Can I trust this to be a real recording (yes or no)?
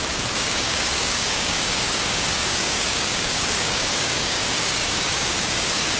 no